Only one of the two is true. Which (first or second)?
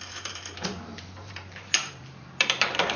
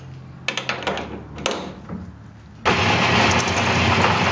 second